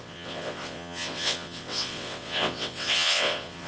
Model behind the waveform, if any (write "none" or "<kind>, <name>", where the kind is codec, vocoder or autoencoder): vocoder, WaveNeXt